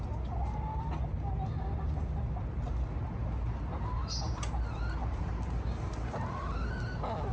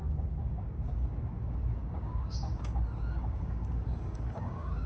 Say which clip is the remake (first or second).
second